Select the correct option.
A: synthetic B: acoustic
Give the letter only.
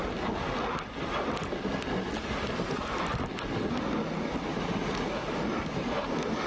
B